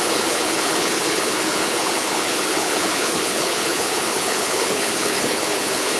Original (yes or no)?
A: no